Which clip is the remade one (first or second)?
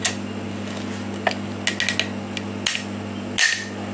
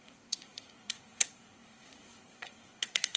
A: second